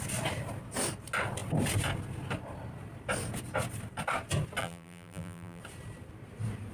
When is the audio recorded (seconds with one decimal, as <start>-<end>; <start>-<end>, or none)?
0.0-4.6; 5.6-6.7